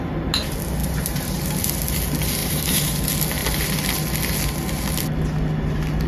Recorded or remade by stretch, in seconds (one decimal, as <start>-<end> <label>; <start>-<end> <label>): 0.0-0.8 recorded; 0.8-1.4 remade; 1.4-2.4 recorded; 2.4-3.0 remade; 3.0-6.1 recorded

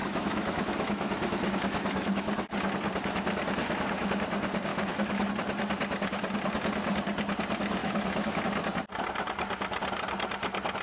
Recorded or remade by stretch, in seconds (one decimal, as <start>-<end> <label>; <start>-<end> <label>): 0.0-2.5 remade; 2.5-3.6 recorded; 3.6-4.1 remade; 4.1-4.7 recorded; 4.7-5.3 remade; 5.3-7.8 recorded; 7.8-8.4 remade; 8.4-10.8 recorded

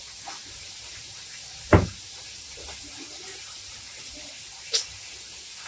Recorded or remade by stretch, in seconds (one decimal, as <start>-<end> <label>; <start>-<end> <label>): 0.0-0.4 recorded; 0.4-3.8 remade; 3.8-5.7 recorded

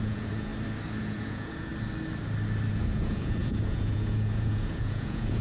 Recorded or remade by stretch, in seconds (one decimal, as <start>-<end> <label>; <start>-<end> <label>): 0.0-0.5 remade; 0.5-1.0 recorded; 1.0-1.7 remade; 1.7-2.7 recorded; 2.7-5.4 remade